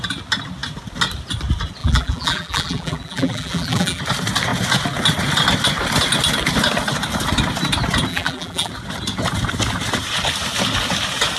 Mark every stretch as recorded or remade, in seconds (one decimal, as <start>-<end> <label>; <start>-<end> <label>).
0.0-1.8 recorded; 1.8-4.0 remade; 4.0-8.1 recorded; 8.1-8.7 remade; 8.7-11.4 recorded